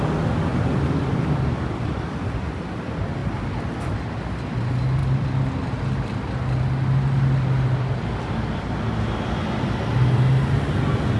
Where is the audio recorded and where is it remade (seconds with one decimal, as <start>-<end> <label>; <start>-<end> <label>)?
0.0-0.5 recorded; 0.5-2.5 remade; 2.5-5.0 recorded; 5.0-5.5 remade; 5.5-9.9 recorded; 9.9-10.7 remade; 10.7-11.2 recorded